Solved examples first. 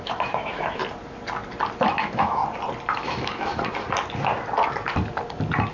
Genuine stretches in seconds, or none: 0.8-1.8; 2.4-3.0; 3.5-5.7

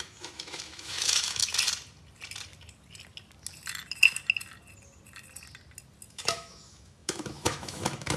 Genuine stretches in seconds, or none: 1.4-6.1

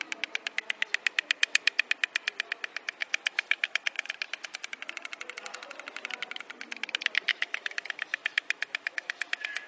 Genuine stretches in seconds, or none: 0.0-1.4; 1.9-3.0; 4.1-7.3

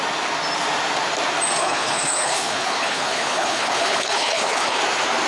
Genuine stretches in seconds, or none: 0.0-1.6; 4.8-5.3

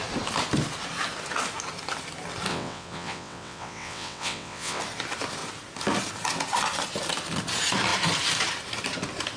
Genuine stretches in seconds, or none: 0.0-2.5; 4.8-9.4